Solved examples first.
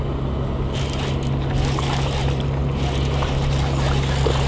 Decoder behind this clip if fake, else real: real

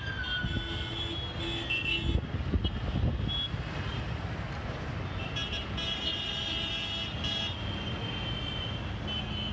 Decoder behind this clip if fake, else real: real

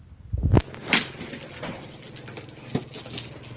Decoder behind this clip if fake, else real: real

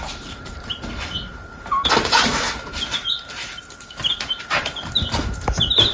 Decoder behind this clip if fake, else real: fake, vocoder, BigVGAN v2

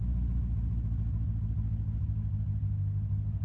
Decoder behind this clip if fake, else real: real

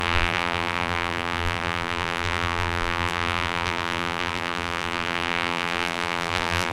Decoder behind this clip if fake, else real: fake, vocoder, BigVGAN v2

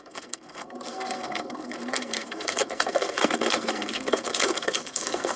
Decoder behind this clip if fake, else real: fake, codec, SNAC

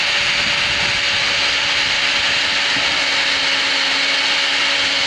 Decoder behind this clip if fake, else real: real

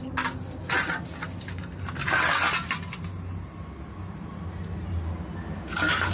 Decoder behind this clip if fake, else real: real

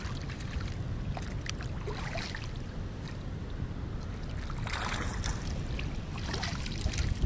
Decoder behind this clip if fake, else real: real